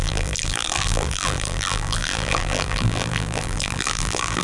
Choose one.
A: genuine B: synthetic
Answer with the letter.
B